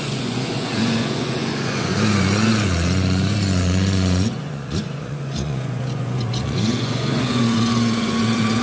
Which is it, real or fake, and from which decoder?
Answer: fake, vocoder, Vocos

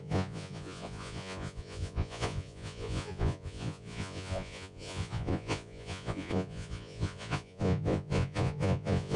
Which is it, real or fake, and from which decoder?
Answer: fake, vocoder, Vocos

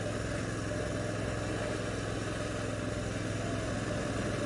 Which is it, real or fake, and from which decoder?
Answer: real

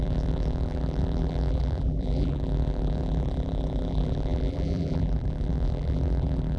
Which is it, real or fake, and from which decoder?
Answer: fake, vocoder, BigVGAN v2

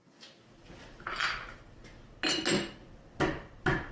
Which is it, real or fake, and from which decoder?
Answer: real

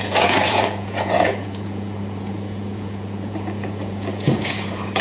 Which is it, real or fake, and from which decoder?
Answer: fake, vocoder, Vocos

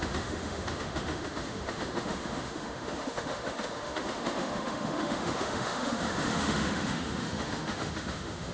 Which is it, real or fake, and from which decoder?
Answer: fake, autoencoder, DAC-VAE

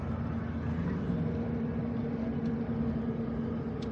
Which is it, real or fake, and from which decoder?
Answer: real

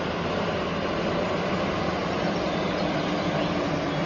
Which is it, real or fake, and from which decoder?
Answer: real